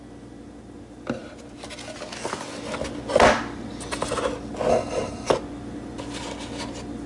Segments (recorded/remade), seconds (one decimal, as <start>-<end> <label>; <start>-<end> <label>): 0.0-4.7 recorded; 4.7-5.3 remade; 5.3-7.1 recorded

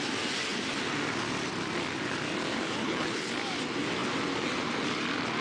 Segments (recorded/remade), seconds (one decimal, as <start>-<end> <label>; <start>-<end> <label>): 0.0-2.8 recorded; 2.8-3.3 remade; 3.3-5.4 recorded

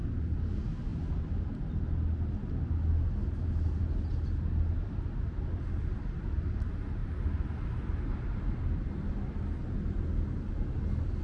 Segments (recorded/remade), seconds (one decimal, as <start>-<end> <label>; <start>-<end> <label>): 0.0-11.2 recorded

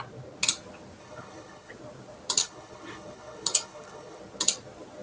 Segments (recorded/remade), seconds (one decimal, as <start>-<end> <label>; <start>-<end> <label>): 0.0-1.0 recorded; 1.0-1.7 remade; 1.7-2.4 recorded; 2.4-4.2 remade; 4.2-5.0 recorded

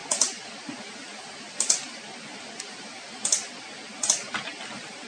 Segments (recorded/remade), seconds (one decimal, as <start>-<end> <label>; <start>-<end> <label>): 0.0-5.1 recorded

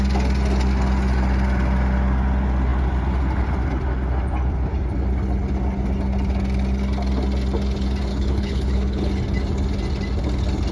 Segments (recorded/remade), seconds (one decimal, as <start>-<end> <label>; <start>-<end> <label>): 0.0-8.1 recorded; 8.1-9.1 remade; 9.1-10.7 recorded

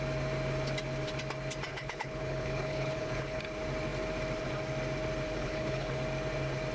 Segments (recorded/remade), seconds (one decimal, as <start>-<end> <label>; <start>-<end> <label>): 0.0-1.7 recorded; 1.7-3.4 remade; 3.4-5.4 recorded; 5.4-5.9 remade; 5.9-6.7 recorded